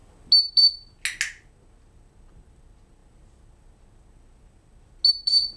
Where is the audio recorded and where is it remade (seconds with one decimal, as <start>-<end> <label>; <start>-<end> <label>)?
0.0-5.6 recorded